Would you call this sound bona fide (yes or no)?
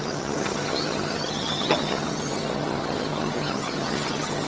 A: no